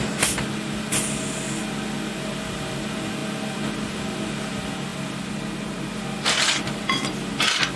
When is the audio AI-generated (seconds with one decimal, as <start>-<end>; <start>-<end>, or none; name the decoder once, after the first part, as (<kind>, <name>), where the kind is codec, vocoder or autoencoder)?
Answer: none